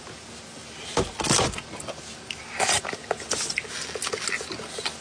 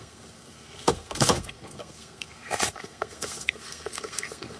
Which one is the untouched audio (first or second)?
first